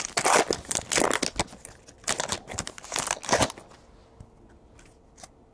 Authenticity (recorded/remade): recorded